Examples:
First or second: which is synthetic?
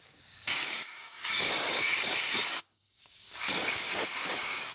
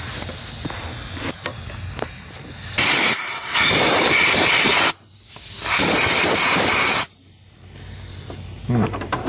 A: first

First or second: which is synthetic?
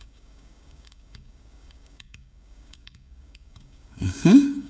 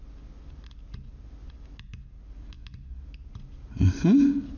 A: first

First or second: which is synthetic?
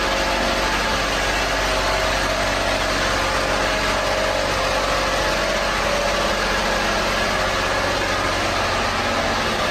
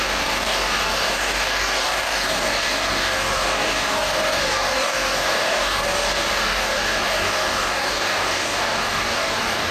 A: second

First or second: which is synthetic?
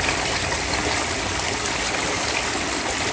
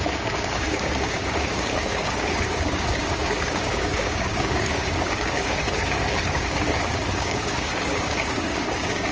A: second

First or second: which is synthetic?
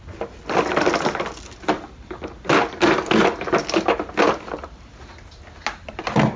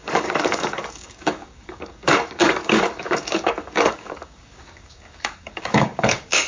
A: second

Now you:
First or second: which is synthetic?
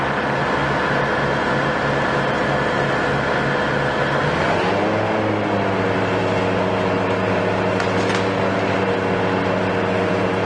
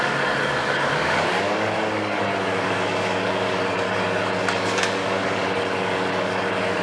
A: second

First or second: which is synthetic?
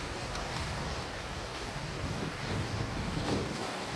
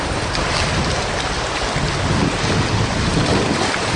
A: first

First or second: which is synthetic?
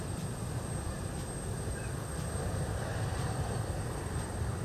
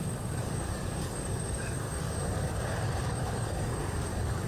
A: second